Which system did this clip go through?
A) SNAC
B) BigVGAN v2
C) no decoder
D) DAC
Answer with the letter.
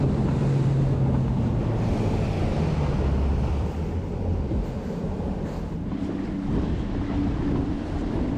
C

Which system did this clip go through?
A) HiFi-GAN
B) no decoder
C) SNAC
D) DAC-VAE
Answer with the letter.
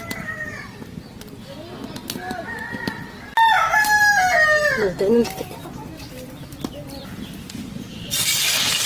B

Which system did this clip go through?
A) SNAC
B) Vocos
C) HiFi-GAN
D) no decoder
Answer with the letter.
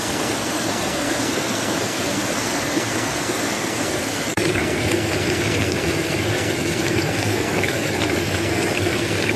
A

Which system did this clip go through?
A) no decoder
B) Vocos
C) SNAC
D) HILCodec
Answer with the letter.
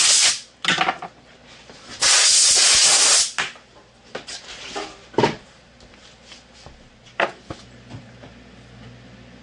A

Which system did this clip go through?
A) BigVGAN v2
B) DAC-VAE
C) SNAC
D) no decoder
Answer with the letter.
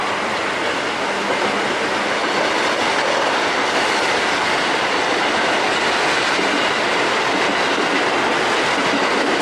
D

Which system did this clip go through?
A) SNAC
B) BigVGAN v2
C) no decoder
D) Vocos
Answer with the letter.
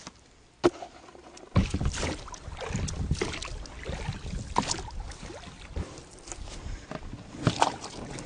C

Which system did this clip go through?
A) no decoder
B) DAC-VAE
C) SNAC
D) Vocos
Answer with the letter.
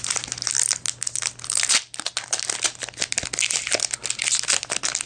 A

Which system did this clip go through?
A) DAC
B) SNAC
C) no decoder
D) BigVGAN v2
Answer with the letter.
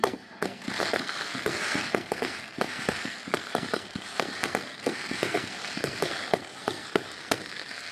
B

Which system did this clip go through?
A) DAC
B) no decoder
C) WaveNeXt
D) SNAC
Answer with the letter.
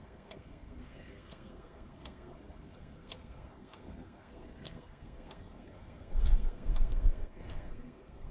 D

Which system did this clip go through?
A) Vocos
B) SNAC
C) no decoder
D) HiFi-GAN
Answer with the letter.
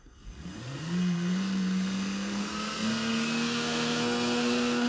B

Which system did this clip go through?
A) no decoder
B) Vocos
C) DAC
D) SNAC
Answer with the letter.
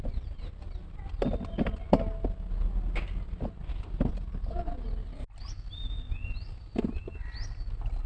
A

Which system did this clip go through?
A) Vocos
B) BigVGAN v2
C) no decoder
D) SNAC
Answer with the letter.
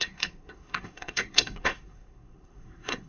D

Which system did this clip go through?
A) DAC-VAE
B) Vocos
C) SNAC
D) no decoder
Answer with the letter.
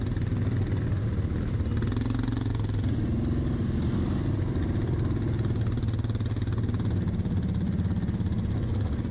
D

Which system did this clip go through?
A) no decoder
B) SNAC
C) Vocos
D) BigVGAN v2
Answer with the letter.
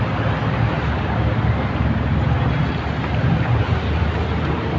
A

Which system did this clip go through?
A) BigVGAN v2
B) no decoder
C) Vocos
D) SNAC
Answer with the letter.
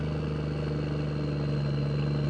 B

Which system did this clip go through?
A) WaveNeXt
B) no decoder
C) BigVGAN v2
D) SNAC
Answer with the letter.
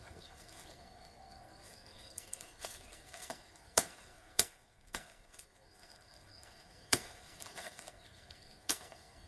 D